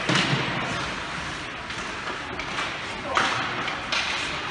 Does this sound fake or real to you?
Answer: real